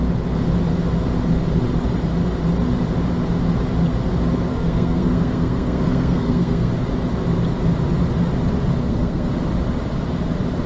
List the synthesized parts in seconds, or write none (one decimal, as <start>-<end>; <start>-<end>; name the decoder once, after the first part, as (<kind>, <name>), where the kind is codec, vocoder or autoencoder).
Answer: 4.5-6.7 (codec, SNAC); 8.8-9.3